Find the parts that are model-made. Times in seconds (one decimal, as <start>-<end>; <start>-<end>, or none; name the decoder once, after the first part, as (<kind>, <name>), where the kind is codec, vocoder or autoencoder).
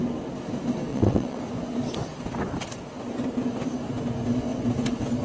0.9-1.4 (vocoder, WaveNeXt)